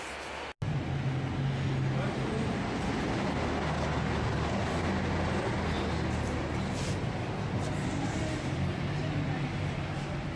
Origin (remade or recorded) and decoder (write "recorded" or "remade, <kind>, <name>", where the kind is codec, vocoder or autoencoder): recorded